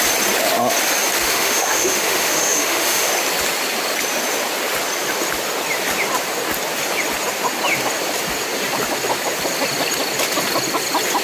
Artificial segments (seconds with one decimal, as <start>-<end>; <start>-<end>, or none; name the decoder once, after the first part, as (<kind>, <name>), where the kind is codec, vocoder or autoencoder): 1.2-3.1 (autoencoder, DAC-VAE)